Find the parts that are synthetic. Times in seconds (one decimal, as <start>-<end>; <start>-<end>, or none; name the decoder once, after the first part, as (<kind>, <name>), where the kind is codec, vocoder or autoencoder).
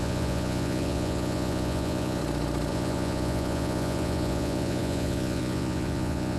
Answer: 0.0-2.2 (vocoder, Vocos); 2.7-6.4